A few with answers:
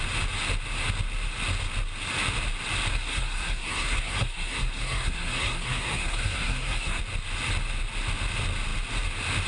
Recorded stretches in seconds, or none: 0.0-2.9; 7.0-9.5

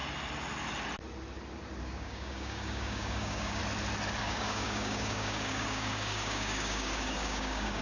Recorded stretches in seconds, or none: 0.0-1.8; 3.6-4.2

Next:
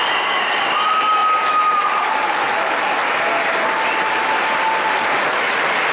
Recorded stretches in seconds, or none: 0.0-5.9

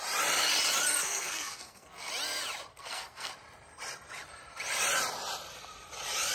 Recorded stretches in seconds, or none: 0.0-1.0; 2.1-2.7; 3.3-6.3